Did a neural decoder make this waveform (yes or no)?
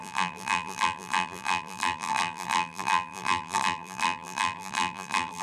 yes